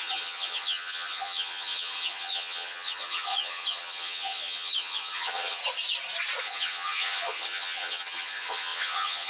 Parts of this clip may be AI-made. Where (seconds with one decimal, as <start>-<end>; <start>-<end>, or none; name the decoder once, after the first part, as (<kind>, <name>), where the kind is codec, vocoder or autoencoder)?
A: 0.0-5.6 (vocoder, HiFi-GAN); 6.4-9.3